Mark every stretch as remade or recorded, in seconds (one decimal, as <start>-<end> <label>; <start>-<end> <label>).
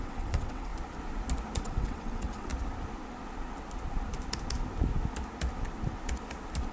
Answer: 0.0-0.7 remade; 0.7-1.6 recorded; 1.6-2.5 remade; 2.5-6.7 recorded